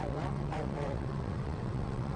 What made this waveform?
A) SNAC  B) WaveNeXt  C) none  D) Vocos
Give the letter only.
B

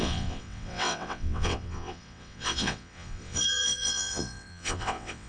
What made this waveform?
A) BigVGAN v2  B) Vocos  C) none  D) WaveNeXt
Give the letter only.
D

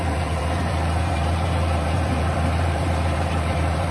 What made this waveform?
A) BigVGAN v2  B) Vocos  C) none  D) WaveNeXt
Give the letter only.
A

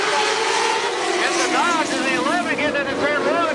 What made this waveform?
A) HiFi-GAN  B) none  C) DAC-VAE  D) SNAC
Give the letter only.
B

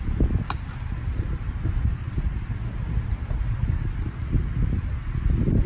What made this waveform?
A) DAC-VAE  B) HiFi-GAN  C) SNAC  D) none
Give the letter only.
D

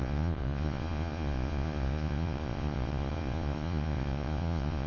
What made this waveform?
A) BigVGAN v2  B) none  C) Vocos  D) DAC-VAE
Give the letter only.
C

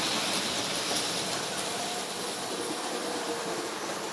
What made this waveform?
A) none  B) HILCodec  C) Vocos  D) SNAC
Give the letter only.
A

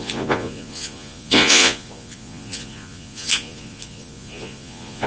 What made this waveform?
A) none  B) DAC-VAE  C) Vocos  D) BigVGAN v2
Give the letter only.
C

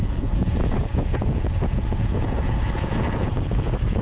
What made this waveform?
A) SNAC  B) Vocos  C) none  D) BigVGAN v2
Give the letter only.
B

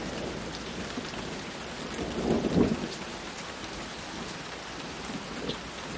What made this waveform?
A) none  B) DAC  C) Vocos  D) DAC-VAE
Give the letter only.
A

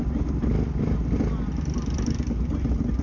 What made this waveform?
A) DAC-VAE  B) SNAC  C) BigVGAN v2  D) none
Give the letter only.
D